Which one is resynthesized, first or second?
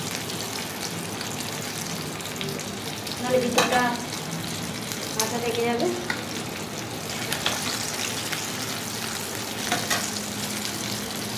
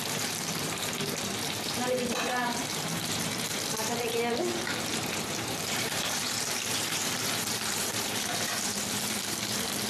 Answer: second